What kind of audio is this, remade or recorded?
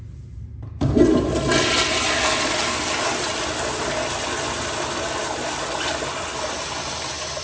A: recorded